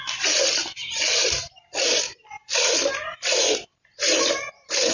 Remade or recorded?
recorded